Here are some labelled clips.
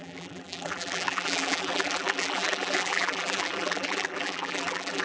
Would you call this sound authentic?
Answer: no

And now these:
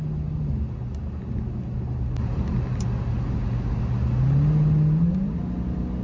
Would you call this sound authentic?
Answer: yes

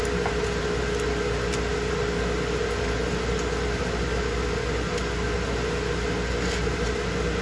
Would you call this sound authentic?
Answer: yes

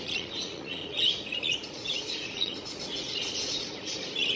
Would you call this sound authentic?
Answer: no